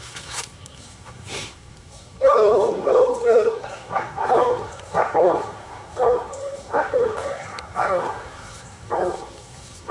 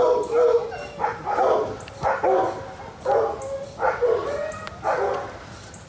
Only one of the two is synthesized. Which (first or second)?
first